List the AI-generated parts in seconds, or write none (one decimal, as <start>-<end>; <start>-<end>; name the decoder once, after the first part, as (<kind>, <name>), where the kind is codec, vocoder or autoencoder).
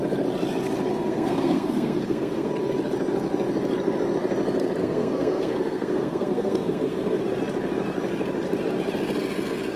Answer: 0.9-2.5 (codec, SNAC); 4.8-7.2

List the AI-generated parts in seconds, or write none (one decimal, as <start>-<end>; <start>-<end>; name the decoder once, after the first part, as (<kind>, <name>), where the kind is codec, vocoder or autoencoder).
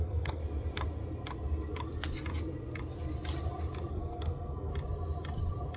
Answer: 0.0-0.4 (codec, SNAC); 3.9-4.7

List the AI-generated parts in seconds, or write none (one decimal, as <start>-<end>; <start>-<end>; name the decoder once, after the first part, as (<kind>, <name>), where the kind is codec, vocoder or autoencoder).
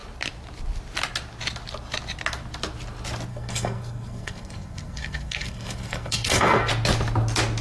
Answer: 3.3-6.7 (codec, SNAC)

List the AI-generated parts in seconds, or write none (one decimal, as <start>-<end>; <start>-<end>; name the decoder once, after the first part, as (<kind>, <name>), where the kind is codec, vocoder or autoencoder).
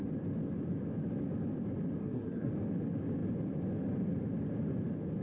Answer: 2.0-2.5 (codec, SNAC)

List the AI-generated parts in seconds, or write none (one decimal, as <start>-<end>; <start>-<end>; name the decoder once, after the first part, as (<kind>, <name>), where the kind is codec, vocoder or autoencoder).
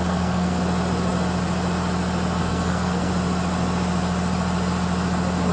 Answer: 0.0-0.6 (codec, SNAC); 2.4-3.1